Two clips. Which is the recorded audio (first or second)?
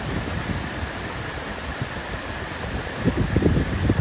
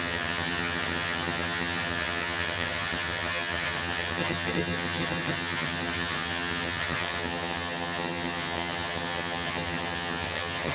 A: first